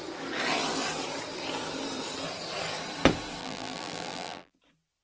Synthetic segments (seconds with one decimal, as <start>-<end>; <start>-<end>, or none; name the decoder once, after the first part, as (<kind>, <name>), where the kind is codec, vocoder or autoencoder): 3.4-4.5 (vocoder, BigVGAN v2)